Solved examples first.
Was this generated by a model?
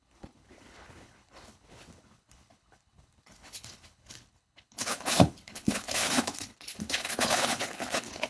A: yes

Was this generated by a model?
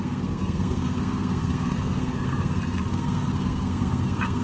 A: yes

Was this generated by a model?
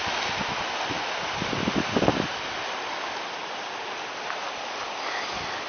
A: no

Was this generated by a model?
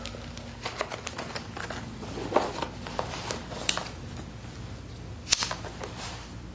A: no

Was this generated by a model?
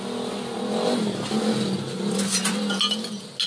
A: no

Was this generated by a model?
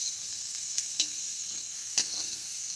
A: yes